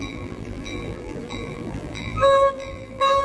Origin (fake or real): fake